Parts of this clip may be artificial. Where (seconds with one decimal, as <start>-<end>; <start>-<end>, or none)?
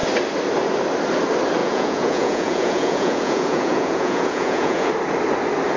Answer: 1.6-4.9